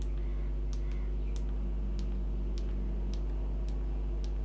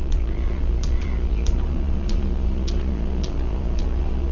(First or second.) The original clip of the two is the first